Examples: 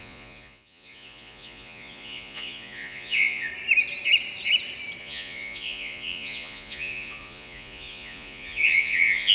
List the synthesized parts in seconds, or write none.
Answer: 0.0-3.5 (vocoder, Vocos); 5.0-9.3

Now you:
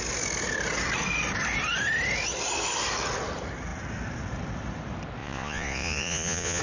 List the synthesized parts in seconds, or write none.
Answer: 5.2-6.6 (vocoder, Vocos)

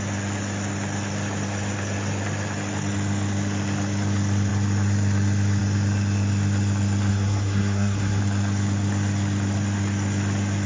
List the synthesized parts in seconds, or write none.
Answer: 7.1-8.2 (codec, SNAC)

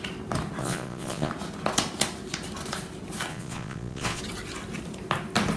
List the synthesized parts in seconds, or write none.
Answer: 0.6-1.3 (vocoder, Vocos); 3.3-4.2

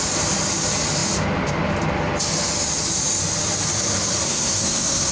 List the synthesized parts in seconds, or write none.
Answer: 4.2-5.1 (codec, SNAC)

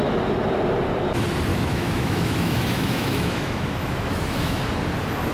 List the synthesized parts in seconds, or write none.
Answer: 1.5-4.7 (autoencoder, DAC-VAE)

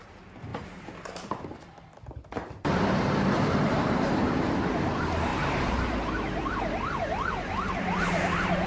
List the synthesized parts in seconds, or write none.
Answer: 0.5-4.6 (vocoder, BigVGAN v2); 5.3-6.0

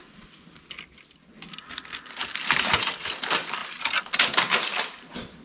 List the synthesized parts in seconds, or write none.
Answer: 2.2-3.1 (vocoder, BigVGAN v2)